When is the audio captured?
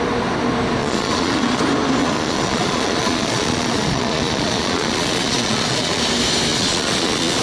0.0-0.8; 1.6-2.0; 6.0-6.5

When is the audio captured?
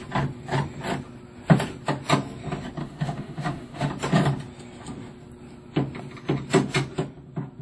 0.0-2.8; 3.9-7.6